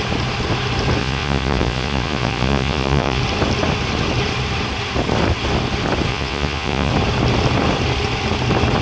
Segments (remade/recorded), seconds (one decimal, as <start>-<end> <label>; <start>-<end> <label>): 0.0-1.0 recorded; 1.0-3.2 remade; 3.2-6.1 recorded; 6.1-6.9 remade; 6.9-8.8 recorded